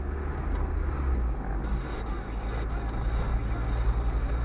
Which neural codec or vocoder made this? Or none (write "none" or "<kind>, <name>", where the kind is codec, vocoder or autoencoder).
none